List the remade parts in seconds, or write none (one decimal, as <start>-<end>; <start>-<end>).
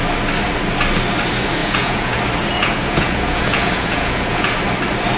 1.6-2.2; 2.6-4.5